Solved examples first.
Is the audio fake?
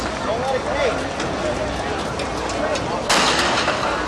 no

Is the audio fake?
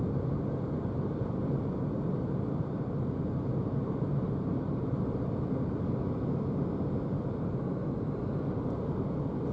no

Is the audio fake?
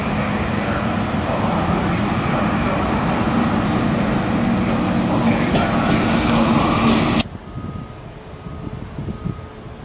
no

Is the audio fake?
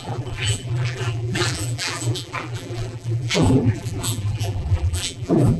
yes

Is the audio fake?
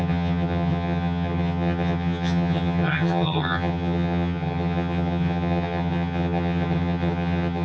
yes